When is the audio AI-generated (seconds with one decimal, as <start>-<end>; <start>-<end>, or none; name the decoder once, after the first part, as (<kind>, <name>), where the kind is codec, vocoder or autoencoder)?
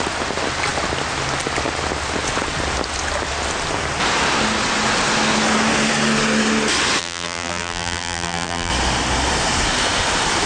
7.0-8.7 (vocoder, BigVGAN v2)